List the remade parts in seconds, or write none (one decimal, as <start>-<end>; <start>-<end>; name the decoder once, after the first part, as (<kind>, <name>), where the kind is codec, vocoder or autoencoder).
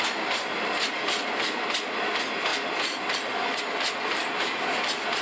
none